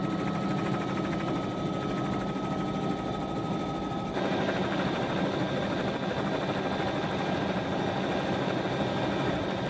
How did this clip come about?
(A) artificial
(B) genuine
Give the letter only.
B